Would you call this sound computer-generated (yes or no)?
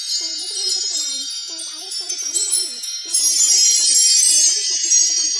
yes